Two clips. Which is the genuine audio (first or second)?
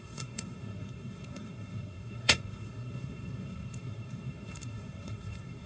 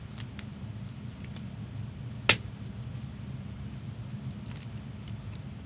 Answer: second